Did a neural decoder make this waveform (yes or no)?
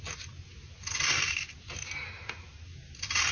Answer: no